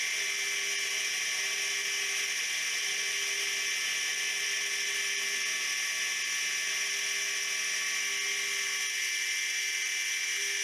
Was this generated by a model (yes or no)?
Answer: no